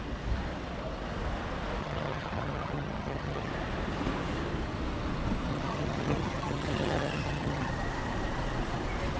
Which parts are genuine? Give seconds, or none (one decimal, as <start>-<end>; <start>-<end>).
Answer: 0.0-1.8; 3.5-5.5; 7.7-9.2